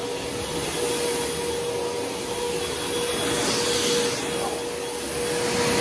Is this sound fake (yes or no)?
no